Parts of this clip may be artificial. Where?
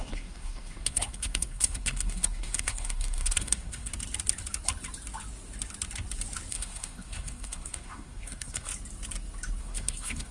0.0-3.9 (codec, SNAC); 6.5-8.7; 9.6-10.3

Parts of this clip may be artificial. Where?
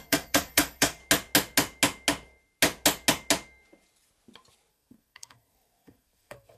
0.0-1.0 (codec, SNAC); 4.7-6.6